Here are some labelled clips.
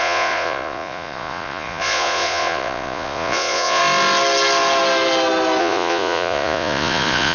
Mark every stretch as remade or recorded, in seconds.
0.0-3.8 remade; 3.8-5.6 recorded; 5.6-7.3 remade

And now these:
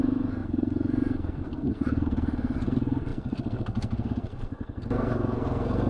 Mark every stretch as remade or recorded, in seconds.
0.0-5.9 remade

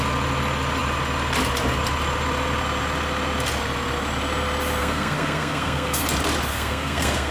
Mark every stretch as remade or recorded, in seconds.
0.0-4.8 recorded; 4.8-6.0 remade; 6.0-6.5 recorded; 6.5-7.3 remade

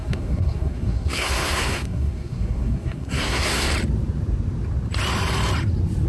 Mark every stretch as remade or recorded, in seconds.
0.0-3.7 remade; 3.7-6.1 recorded

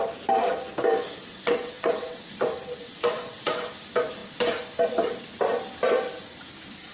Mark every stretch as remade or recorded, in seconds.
0.0-1.2 recorded; 1.2-2.3 remade; 2.3-2.8 recorded; 2.8-3.7 remade; 3.7-6.9 recorded